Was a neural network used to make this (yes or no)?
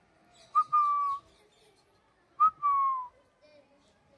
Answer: no